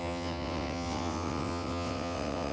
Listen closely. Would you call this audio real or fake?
fake